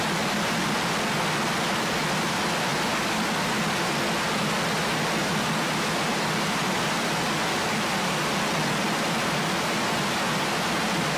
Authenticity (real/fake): real